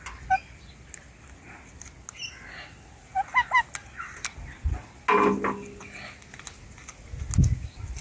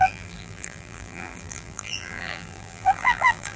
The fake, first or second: second